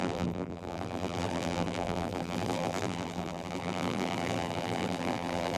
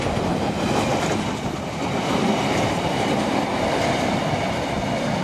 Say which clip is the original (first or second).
second